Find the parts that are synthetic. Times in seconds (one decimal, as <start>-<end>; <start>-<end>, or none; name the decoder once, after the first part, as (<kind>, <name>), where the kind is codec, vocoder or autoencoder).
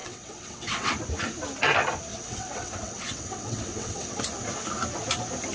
0.0-0.9 (vocoder, WaveNeXt); 2.1-4.2